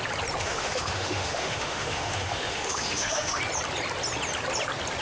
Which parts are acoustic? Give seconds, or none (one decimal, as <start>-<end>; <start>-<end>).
0.0-0.4; 3.4-5.0